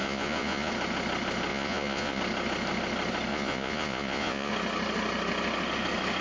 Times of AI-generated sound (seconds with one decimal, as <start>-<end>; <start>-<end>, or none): 0.0-0.7; 1.5-2.2; 3.3-4.5